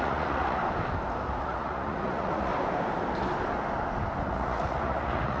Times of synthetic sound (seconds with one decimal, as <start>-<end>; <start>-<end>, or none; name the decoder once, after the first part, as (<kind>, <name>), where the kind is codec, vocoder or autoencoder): 0.0-0.6 (vocoder, Vocos); 1.4-2.5; 4.3-5.4